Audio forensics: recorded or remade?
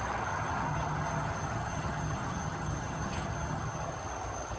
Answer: remade